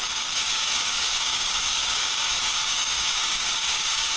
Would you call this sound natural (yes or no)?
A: no